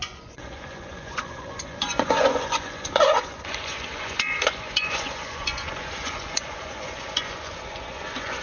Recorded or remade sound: remade